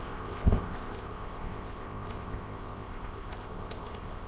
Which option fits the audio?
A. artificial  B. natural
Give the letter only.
A